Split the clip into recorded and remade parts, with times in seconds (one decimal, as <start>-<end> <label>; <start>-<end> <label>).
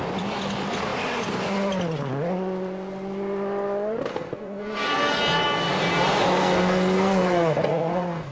0.0-4.1 recorded; 4.1-5.2 remade; 5.2-6.4 recorded; 6.4-8.3 remade